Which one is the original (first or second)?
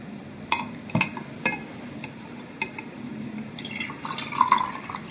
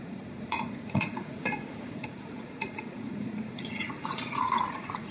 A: first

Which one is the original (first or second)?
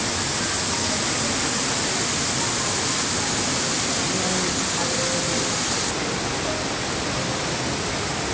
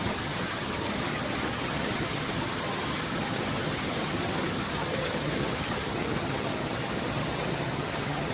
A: first